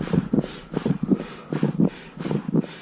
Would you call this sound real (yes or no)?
yes